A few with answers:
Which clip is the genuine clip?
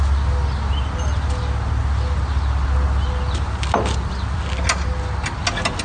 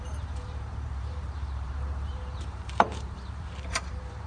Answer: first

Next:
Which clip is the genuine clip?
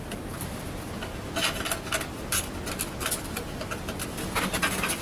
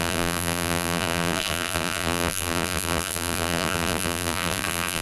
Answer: first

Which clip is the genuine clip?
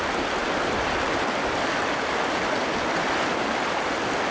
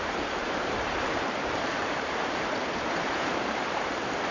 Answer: first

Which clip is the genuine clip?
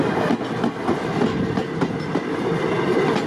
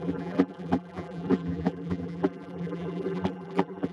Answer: first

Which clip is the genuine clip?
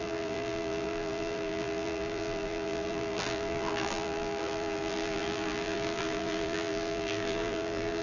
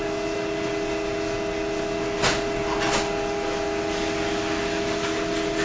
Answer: second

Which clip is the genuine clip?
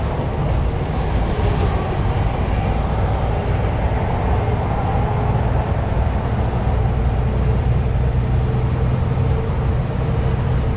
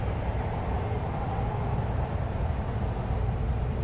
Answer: first